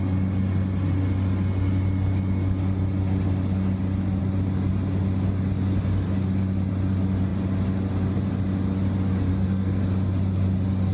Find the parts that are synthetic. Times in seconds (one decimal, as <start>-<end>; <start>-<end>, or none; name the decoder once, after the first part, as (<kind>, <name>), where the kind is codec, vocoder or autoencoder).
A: 9.3-9.8 (codec, SNAC)